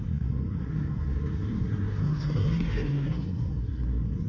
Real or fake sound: fake